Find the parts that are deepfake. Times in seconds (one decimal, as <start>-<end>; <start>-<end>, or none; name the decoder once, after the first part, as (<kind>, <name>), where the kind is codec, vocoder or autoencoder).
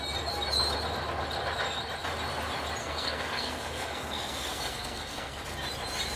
2.8-5.4 (codec, SNAC)